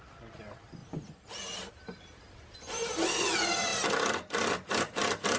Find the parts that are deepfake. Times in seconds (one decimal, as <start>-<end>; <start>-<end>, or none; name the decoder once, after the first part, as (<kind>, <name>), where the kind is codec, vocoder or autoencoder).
0.8-2.9 (vocoder, BigVGAN v2)